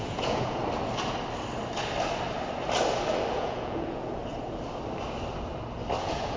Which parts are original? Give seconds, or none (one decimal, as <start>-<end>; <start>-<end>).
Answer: 0.6-3.3; 4.2-6.0